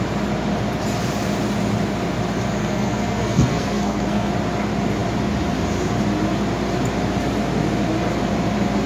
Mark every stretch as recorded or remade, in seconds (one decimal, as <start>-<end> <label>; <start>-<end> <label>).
0.0-2.6 recorded; 2.6-4.3 remade; 4.3-8.9 recorded